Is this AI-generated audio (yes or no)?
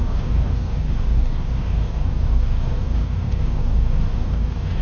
yes